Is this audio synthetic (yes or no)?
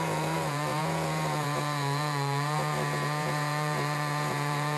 yes